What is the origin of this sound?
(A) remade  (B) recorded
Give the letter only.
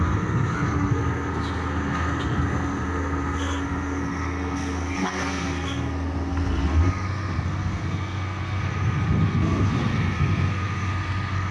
A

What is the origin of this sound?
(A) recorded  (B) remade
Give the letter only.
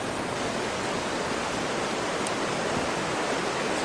A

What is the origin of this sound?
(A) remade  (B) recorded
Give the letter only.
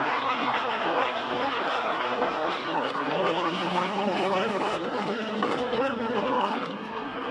A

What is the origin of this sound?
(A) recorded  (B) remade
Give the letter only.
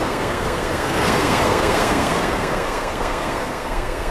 B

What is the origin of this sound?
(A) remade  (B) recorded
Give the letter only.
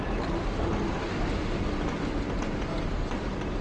B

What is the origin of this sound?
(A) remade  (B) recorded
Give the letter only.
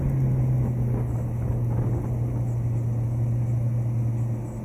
B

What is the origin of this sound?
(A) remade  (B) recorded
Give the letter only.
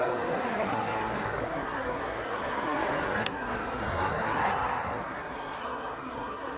A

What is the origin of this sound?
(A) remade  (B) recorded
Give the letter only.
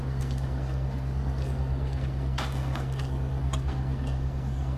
A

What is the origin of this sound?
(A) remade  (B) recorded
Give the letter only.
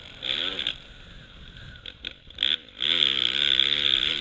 B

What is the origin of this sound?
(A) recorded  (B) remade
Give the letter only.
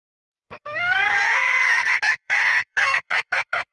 B